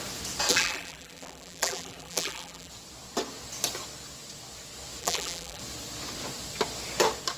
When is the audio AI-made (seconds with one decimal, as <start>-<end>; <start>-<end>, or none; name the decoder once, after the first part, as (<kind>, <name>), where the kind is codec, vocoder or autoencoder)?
0.5-2.7 (vocoder, BigVGAN v2); 5.0-5.6